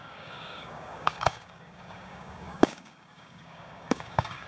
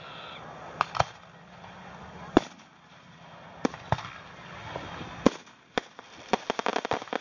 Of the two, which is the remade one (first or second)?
first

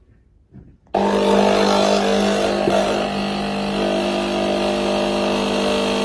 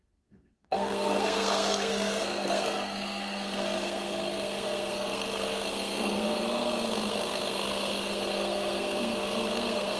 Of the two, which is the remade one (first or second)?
second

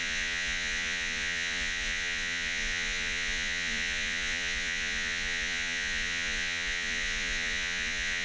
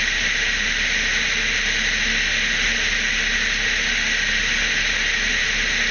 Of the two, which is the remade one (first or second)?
first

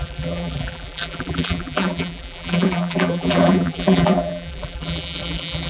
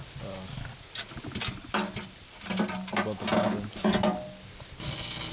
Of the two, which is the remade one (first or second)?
first